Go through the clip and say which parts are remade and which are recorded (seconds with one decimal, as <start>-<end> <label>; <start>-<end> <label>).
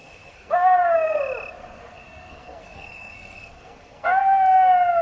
0.0-1.2 remade; 1.2-1.6 recorded; 1.6-4.2 remade; 4.2-5.0 recorded